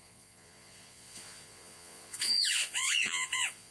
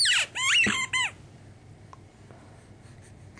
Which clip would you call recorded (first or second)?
second